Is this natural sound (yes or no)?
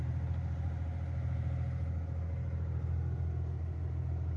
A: yes